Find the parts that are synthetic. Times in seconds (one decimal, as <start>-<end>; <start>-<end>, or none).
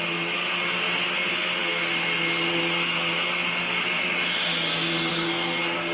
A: none